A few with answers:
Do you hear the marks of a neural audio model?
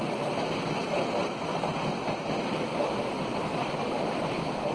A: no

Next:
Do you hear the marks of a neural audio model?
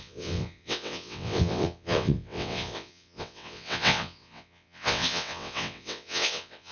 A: yes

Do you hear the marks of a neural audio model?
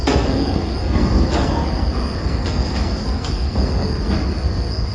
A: yes